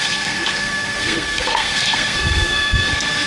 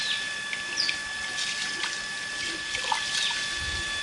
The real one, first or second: second